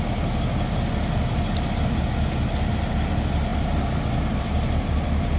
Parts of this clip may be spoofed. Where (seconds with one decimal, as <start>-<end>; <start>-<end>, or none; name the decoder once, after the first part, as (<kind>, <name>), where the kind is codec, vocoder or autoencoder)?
none